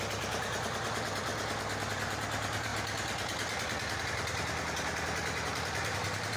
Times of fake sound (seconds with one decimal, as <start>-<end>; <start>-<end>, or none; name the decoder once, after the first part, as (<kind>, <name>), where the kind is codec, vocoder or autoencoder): 0.0-1.3 (vocoder, BigVGAN v2); 1.9-2.7; 4.0-6.4